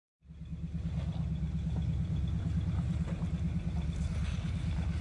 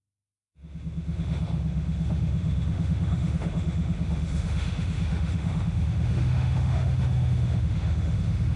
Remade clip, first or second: second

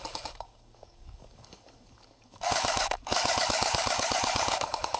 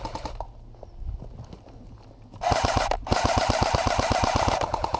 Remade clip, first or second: first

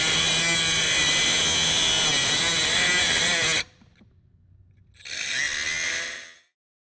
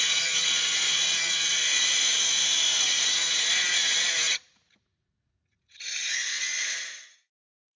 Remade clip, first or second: second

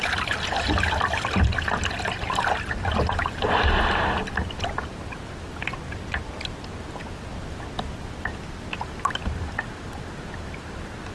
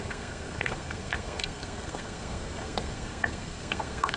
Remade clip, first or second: second